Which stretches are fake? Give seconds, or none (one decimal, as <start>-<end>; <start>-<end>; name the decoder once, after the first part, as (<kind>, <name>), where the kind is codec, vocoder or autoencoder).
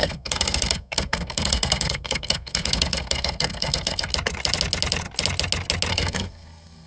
0.0-4.1 (codec, SNAC); 5.9-6.9